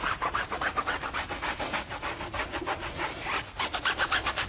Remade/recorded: recorded